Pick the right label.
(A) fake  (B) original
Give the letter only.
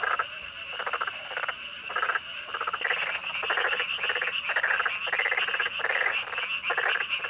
B